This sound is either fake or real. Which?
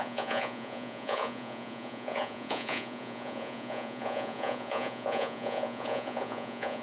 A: fake